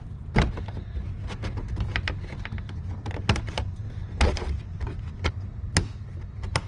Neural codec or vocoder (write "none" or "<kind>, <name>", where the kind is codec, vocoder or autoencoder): none